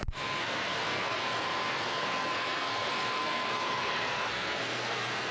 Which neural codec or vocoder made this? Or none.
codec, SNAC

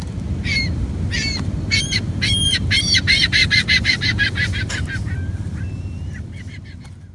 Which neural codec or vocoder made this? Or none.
vocoder, BigVGAN v2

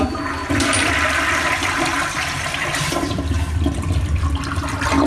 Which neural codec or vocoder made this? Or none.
vocoder, BigVGAN v2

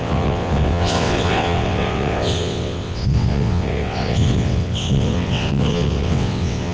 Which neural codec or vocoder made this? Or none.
vocoder, WaveNeXt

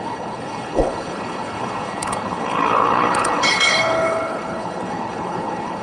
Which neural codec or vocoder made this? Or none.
codec, HILCodec